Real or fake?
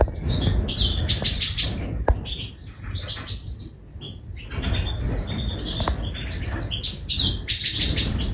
real